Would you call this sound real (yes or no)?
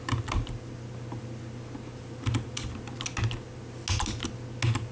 yes